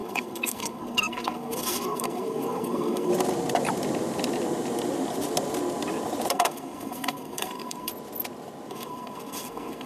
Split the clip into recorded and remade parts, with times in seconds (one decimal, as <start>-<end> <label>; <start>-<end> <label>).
0.0-3.1 remade; 3.1-6.3 recorded; 6.3-7.9 remade; 7.9-8.7 recorded; 8.7-9.9 remade